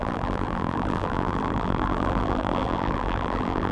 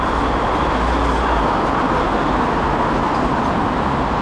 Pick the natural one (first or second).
second